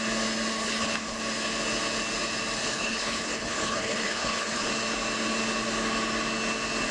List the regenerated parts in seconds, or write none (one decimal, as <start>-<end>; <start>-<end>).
0.6-1.2; 2.6-4.7